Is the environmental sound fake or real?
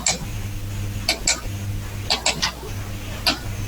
real